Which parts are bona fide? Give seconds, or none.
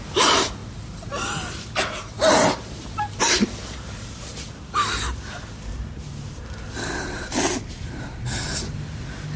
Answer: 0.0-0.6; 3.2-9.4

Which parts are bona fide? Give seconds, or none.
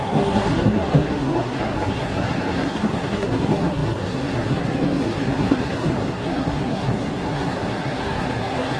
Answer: none